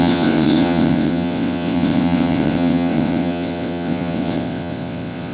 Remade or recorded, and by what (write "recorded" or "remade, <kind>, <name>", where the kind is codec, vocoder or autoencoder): remade, vocoder, WaveNeXt